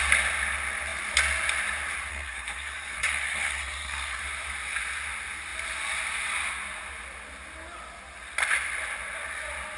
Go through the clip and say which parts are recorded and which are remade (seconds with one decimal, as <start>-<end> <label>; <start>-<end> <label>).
0.0-2.1 recorded; 2.1-4.2 remade; 4.2-9.8 recorded